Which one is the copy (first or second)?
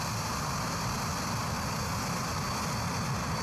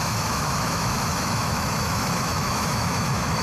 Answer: second